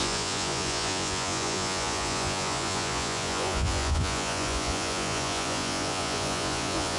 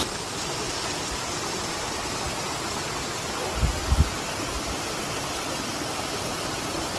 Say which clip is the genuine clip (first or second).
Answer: second